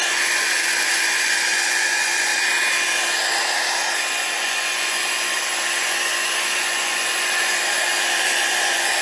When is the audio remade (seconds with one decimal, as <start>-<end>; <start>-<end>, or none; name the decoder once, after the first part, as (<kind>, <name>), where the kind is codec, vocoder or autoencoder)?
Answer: 0.0-2.3 (vocoder, Vocos); 4.0-9.0